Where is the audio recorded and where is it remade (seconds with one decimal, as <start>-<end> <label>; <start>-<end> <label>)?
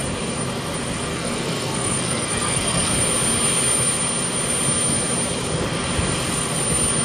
0.0-1.1 recorded; 1.1-2.9 remade; 2.9-7.0 recorded